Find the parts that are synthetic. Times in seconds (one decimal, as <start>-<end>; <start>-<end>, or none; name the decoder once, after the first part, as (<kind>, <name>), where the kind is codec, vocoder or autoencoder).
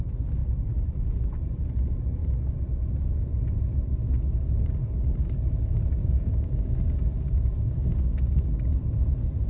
6.0-8.7 (codec, DAC)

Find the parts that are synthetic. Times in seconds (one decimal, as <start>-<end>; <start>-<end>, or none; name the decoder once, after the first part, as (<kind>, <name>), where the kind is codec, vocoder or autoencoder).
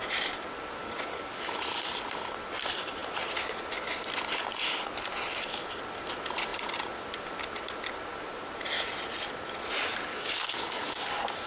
0.8-1.6 (codec, DAC); 10.1-11.0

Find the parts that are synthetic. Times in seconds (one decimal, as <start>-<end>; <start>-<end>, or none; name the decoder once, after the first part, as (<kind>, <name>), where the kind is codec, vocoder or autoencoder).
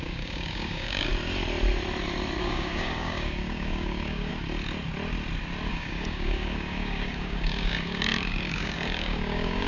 0.0-1.1 (codec, DAC); 2.4-4.3; 5.7-9.7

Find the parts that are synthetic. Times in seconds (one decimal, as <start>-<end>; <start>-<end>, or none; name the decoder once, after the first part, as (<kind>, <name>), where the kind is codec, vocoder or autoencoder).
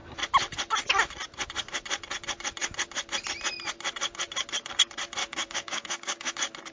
5.2-6.3 (codec, DAC)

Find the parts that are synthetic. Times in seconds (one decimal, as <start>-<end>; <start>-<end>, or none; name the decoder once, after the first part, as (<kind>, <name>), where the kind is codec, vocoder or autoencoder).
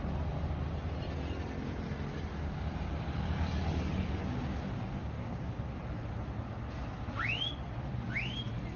5.0-5.7 (codec, DAC)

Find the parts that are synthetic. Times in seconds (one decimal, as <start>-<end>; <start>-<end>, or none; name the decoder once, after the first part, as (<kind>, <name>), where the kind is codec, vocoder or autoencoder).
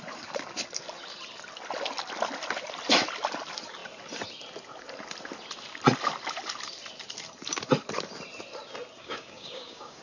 9.0-10.0 (codec, DAC)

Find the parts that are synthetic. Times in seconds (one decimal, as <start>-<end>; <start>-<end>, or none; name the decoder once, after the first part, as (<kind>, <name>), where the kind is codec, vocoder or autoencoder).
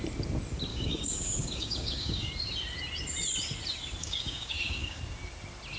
0.7-2.3 (codec, DAC); 4.0-5.0